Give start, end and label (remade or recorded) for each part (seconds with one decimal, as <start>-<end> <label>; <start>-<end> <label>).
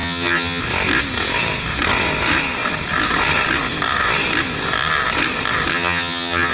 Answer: 0.0-0.6 remade; 0.6-5.7 recorded; 5.7-6.5 remade